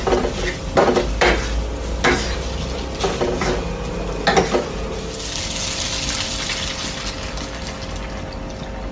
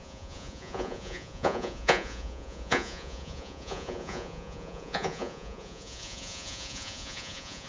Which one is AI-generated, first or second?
second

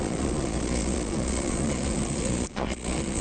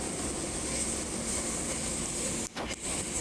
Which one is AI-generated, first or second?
first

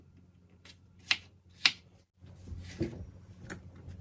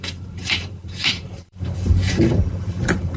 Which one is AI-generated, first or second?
second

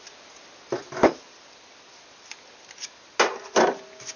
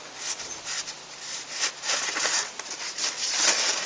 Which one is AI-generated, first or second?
second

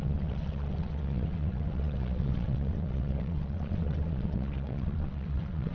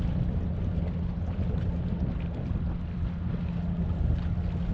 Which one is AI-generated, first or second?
first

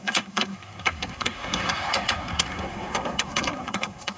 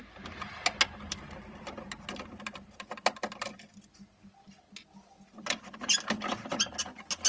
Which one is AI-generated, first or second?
first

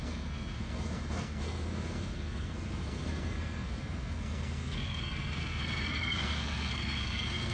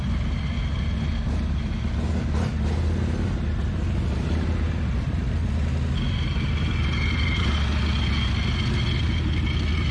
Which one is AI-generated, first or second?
first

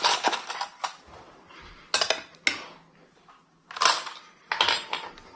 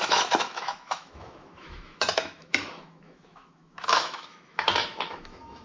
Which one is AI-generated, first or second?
second